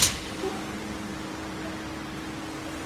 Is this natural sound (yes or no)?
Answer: yes